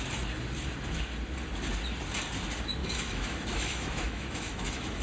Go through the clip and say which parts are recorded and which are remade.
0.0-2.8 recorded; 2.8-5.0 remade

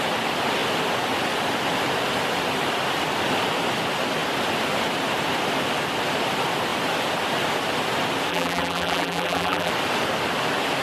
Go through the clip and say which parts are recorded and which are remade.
0.0-8.3 recorded; 8.3-9.7 remade; 9.7-10.8 recorded

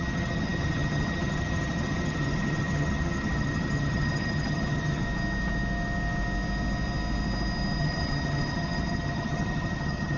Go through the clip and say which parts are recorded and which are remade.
0.0-5.0 remade; 5.0-7.8 recorded; 7.8-10.2 remade

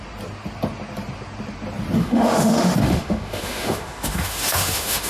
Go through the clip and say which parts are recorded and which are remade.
0.0-2.0 recorded; 2.0-5.1 remade

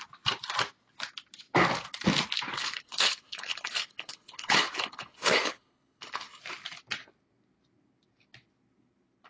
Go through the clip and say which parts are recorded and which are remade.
0.0-2.6 recorded; 2.6-6.4 remade; 6.4-9.3 recorded

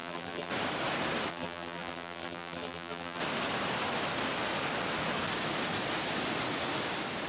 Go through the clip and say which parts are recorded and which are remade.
0.0-0.5 remade; 0.5-1.3 recorded; 1.3-3.2 remade; 3.2-7.3 recorded

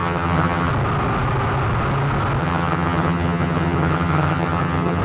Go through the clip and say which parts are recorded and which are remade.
0.0-0.7 remade; 0.7-2.4 recorded; 2.4-5.0 remade

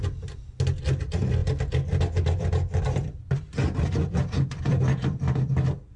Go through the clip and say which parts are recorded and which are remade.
0.0-6.0 recorded